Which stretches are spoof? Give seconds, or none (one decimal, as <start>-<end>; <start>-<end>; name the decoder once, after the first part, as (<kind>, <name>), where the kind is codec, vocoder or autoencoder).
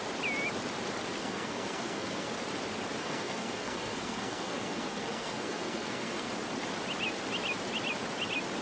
1.2-2.3 (codec, SNAC); 3.0-6.3